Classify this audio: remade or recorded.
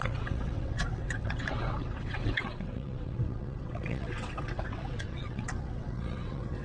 remade